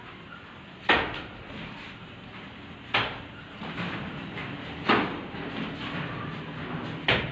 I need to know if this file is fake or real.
real